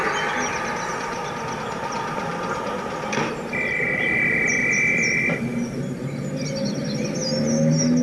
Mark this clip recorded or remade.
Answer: recorded